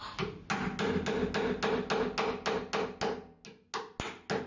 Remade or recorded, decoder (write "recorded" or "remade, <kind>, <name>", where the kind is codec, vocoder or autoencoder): recorded